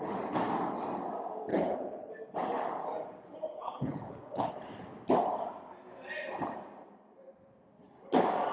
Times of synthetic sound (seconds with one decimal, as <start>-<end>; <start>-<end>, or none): 1.5-2.1; 3.5-4.5